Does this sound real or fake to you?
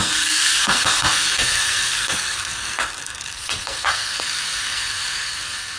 fake